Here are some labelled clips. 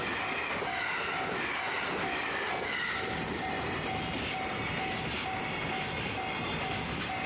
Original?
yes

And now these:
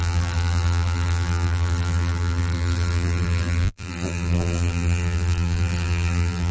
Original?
no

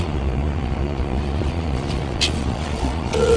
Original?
no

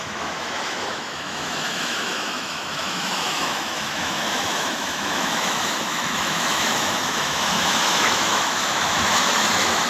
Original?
no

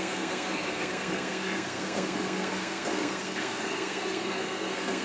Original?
no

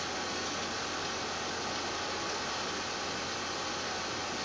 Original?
yes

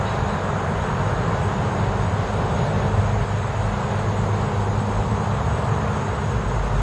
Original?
yes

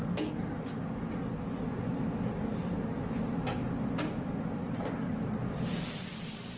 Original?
yes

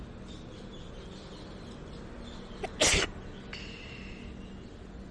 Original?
yes